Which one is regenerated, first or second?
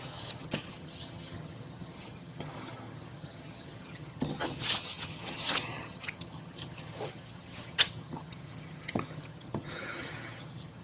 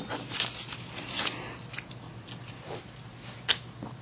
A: first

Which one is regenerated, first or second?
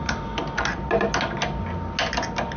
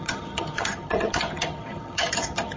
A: second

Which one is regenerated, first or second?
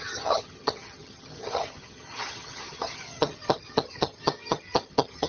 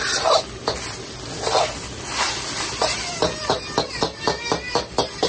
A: first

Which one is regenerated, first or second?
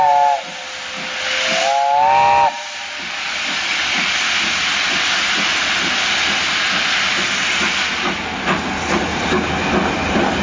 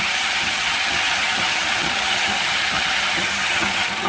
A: second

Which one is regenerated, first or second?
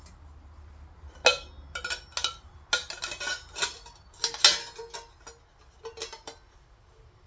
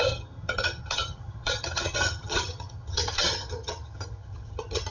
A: second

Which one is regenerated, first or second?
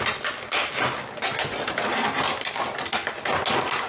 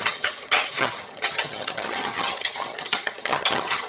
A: second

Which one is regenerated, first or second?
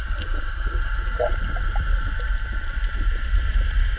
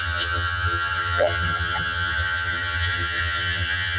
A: second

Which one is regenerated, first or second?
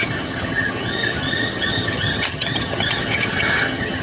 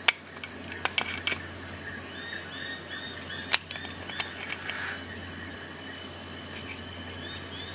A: first